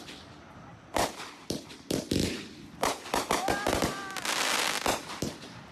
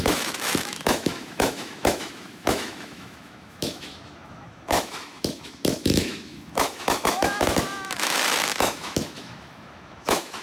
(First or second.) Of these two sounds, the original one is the first